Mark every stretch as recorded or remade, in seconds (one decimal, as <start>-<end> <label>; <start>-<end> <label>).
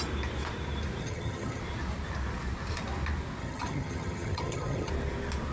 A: 0.0-1.0 recorded; 1.0-1.6 remade; 1.6-3.4 recorded; 3.4-4.9 remade; 4.9-5.5 recorded